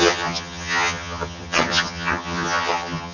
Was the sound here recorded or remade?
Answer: remade